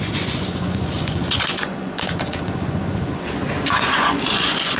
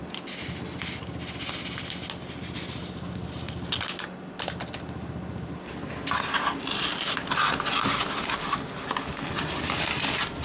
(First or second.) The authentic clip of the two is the second